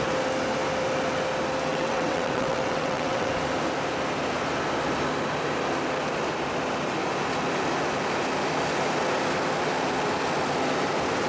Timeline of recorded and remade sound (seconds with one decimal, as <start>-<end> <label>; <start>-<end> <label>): 0.0-1.7 recorded; 1.7-3.3 remade; 3.3-11.3 recorded